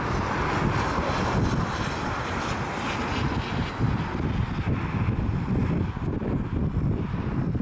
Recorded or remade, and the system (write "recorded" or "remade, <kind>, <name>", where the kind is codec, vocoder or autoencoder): recorded